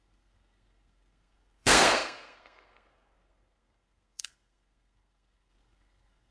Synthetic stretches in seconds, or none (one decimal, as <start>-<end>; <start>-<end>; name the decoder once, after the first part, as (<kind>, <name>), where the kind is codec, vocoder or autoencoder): 0.0-6.3 (codec, SNAC)